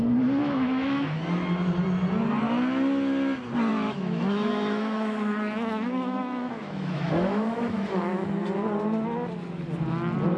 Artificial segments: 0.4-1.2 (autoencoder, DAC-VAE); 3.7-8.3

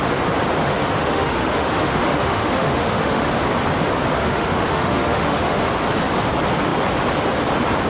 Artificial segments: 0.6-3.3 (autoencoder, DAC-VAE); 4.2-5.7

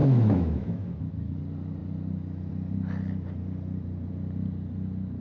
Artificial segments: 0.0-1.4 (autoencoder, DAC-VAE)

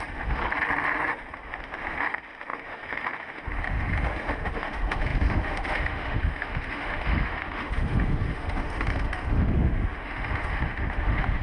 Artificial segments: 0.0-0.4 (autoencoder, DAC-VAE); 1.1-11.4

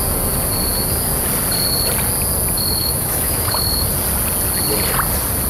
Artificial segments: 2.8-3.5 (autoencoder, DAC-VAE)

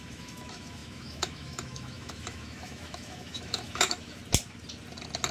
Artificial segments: 0.0-4.2 (autoencoder, DAC-VAE)

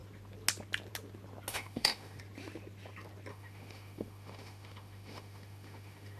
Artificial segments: 1.5-2.2 (autoencoder, DAC-VAE); 3.3-6.2